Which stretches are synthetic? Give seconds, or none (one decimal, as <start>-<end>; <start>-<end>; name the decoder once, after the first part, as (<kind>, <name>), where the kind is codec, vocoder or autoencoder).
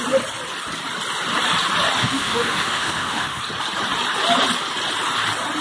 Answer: 2.0-3.4 (autoencoder, DAC-VAE)